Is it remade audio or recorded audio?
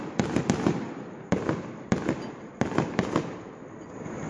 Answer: recorded